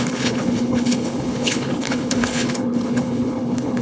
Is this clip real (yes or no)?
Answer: no